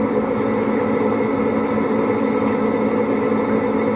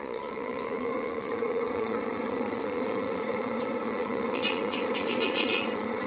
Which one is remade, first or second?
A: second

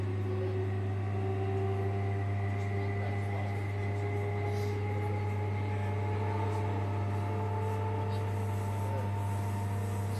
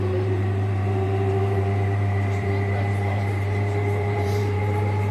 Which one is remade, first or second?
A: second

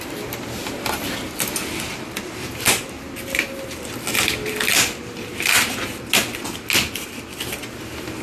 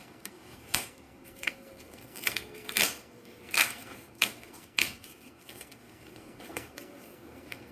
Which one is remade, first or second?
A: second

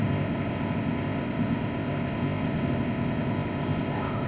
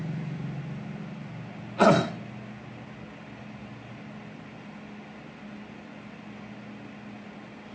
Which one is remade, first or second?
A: first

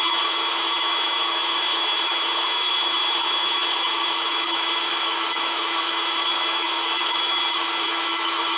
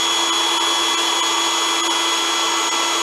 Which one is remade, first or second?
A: first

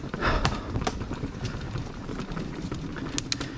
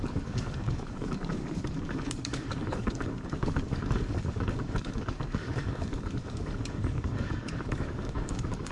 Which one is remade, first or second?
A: second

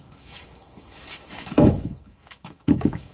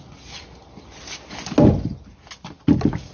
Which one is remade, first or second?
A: first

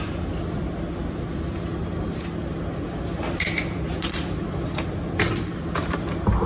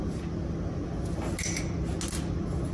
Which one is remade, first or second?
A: first